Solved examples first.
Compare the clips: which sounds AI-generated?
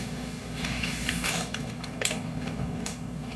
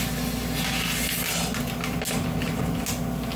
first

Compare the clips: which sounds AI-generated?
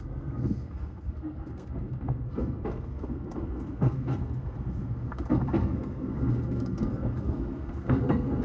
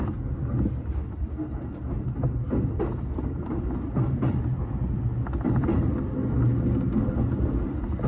first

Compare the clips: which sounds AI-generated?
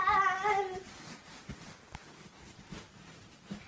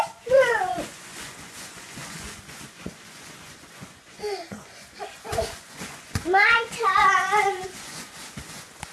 second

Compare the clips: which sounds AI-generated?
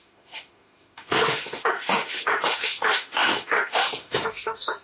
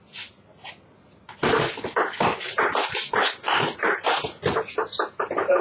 first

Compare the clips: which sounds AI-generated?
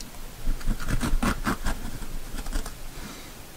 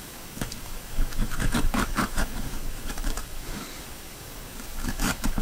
second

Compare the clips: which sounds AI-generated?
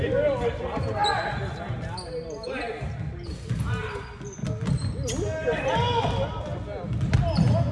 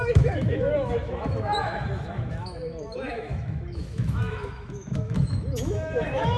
second